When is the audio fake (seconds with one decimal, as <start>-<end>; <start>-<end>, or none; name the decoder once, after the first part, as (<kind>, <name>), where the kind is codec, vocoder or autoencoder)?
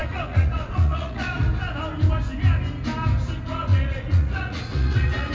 0.0-1.5 (vocoder, Vocos); 3.7-5.3